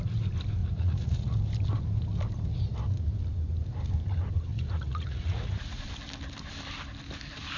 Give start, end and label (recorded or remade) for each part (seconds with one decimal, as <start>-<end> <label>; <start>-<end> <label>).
0.0-0.6 recorded; 0.6-1.4 remade; 1.4-4.5 recorded; 4.5-5.8 remade; 5.8-7.6 recorded